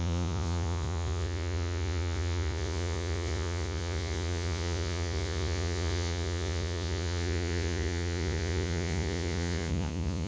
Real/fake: fake